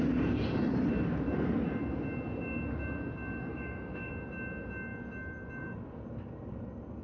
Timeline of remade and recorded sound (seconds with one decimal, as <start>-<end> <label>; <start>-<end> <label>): 0.0-3.5 recorded; 3.5-4.1 remade; 4.1-7.0 recorded